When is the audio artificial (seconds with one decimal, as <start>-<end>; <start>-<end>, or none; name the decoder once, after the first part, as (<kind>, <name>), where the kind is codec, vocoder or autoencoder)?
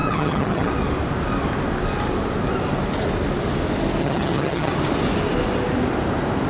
0.0-0.7 (vocoder, HiFi-GAN); 4.0-4.7